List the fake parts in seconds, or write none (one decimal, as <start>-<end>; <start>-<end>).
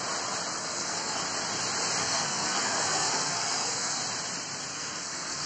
0.6-1.2; 2.0-4.0; 4.7-5.5